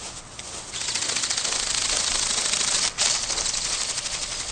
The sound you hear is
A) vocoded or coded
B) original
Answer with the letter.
B